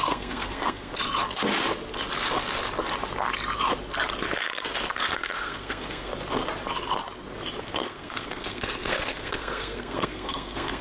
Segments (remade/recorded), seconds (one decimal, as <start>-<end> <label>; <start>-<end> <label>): 0.0-0.9 remade; 0.9-4.9 recorded; 4.9-6.1 remade; 6.1-7.6 recorded; 7.6-10.8 remade